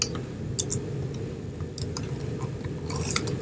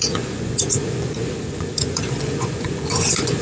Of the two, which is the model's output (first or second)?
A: second